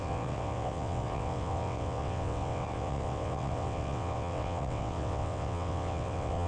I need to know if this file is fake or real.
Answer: fake